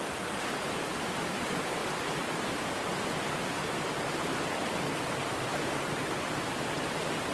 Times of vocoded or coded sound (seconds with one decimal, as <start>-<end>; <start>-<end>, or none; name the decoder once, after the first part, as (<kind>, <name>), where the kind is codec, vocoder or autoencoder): 5.5-6.6 (vocoder, BigVGAN v2)

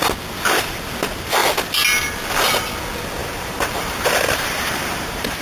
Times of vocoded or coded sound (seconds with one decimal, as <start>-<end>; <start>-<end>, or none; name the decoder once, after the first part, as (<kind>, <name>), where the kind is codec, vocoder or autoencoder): 3.2-5.4 (vocoder, BigVGAN v2)

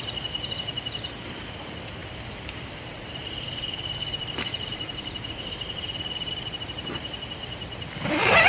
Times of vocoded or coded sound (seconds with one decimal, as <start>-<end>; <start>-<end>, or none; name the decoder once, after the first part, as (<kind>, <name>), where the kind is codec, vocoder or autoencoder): 2.0-6.3 (vocoder, BigVGAN v2)

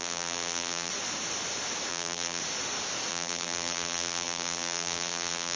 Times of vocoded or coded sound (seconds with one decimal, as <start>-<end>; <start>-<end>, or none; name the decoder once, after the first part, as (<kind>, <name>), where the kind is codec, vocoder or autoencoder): 0.0-0.9 (vocoder, BigVGAN v2); 1.9-2.4; 3.1-5.6